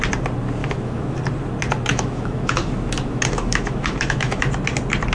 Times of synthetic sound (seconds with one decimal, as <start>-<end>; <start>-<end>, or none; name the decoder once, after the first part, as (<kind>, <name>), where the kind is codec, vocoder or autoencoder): 0.6-1.2 (autoencoder, DAC-VAE); 1.9-4.4